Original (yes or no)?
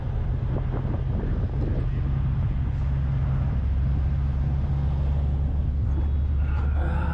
yes